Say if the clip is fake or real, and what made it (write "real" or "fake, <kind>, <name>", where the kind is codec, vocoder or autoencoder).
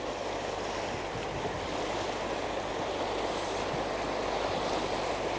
real